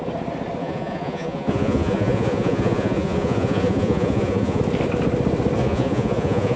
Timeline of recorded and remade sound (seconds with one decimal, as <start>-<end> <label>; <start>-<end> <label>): 0.0-0.6 recorded; 0.6-4.6 remade; 4.6-5.6 recorded; 5.6-6.6 remade